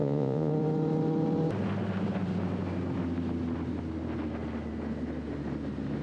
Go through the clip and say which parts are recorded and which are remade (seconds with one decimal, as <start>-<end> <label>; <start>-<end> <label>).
0.0-0.5 remade; 0.5-6.0 recorded